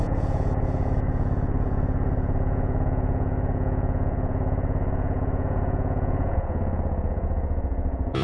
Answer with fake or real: fake